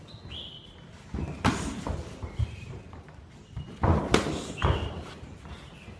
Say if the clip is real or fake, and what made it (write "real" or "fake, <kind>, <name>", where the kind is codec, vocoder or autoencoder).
real